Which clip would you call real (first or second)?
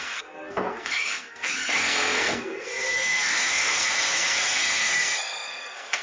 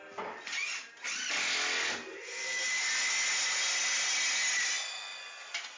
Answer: second